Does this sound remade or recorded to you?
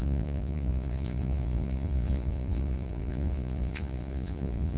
remade